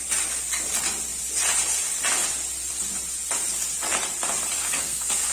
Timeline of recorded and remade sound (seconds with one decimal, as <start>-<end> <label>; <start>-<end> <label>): 0.0-4.6 recorded; 4.6-5.3 remade